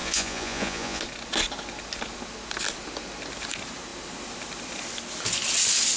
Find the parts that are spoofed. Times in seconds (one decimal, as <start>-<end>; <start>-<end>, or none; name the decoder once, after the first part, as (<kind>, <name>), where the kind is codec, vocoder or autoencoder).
0.0-1.0 (vocoder, Vocos)